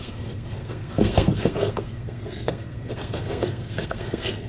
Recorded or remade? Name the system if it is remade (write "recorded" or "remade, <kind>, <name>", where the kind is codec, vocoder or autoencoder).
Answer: remade, codec, SNAC